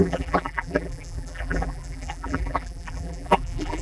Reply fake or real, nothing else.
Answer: fake